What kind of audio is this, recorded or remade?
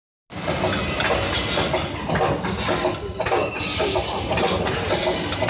recorded